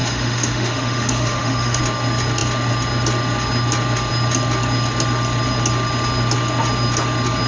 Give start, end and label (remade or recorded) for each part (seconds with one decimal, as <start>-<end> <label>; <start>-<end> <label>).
0.0-1.8 remade; 1.8-7.5 recorded